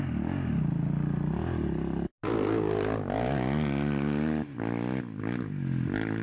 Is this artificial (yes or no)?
no